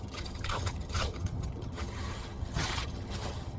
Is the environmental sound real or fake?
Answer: fake